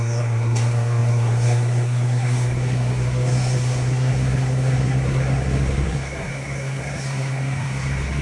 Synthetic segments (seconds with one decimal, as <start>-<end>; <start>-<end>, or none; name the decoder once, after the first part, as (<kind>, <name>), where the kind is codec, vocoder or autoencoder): 0.0-8.2 (codec, SNAC)

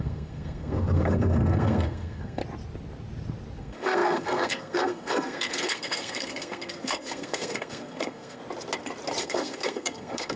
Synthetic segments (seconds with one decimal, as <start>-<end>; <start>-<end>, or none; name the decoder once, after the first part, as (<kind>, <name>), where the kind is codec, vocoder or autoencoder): 0.0-2.4 (codec, SNAC); 3.6-8.4; 9.2-10.4